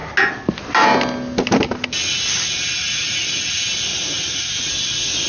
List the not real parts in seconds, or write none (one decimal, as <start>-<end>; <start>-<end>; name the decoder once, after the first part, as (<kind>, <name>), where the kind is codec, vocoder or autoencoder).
3.9-4.5 (vocoder, Vocos)